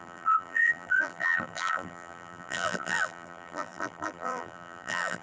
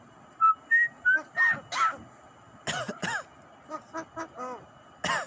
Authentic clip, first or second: second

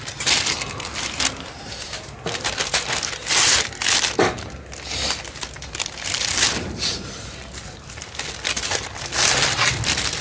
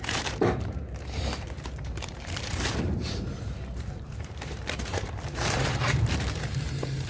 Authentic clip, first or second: first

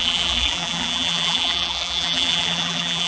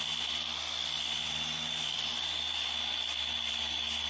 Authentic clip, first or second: second